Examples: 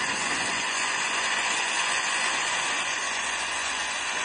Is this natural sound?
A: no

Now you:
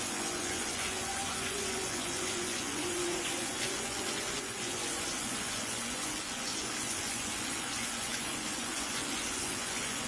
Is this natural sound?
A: no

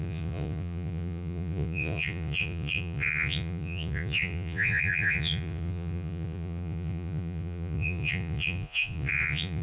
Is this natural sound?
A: no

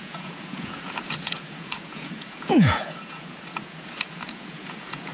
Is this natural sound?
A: no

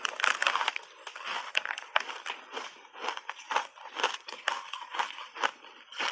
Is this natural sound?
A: yes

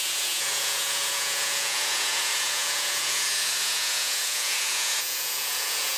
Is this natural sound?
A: no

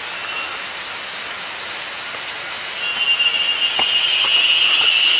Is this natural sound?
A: yes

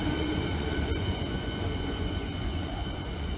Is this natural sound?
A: no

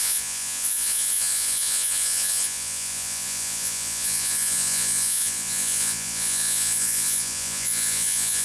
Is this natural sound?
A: no